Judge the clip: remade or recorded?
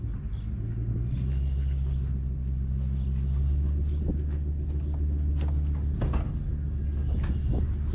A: recorded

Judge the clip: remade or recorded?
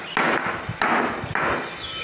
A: recorded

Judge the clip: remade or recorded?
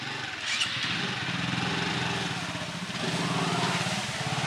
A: recorded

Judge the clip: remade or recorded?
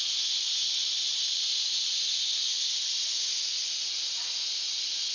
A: recorded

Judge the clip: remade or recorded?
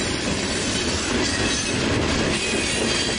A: remade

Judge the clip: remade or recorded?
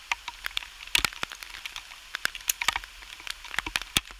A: recorded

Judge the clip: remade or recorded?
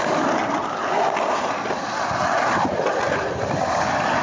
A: recorded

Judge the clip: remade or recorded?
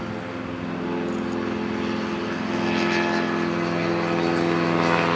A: recorded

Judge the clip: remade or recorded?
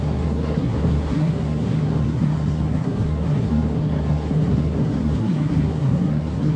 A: remade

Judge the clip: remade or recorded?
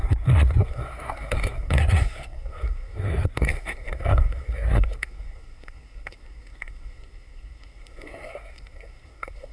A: remade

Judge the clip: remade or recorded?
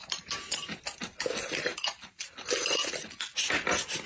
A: recorded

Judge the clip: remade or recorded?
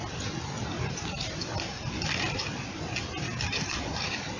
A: recorded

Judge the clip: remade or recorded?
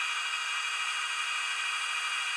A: recorded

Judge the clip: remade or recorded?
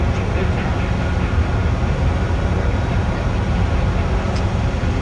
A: recorded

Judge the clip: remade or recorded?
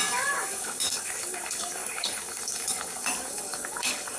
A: remade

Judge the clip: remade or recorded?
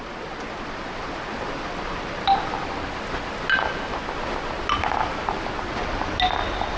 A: recorded